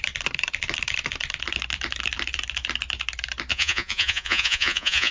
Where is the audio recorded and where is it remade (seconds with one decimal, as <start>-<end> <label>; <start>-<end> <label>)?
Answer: 0.0-3.5 recorded; 3.5-5.1 remade